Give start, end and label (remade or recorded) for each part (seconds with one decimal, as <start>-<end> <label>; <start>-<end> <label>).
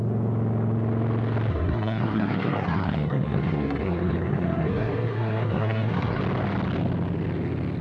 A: 0.0-1.5 recorded; 1.5-6.2 remade; 6.2-7.8 recorded